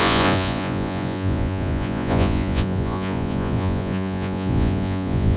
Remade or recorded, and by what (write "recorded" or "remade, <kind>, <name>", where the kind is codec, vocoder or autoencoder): remade, vocoder, Vocos